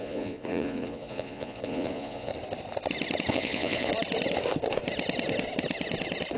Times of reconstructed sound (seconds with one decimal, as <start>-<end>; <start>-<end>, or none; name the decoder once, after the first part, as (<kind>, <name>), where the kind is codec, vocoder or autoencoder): 0.0-2.3 (vocoder, Vocos); 3.3-3.9